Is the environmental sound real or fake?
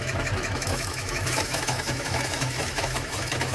fake